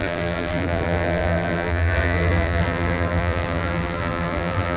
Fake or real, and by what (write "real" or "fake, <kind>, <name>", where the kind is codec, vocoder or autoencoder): fake, vocoder, BigVGAN v2